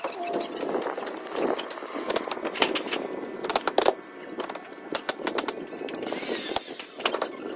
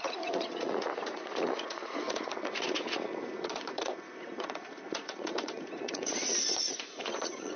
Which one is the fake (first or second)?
second